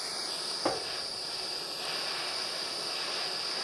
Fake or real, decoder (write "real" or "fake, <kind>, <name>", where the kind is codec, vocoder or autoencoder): real